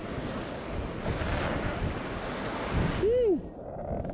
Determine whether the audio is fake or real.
real